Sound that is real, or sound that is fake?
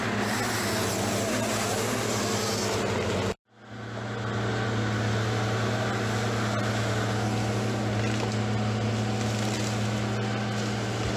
real